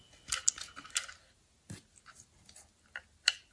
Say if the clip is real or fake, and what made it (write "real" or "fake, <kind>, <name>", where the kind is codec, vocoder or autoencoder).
real